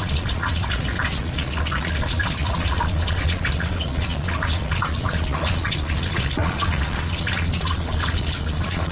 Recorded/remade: remade